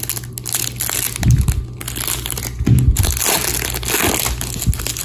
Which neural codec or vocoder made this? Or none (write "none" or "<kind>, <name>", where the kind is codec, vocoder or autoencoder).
none